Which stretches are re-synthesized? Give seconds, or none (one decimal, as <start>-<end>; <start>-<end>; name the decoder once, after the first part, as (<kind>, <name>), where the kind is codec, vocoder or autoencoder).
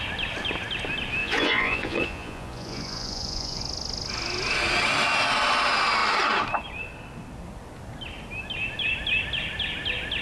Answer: 1.2-3.6 (vocoder, Vocos)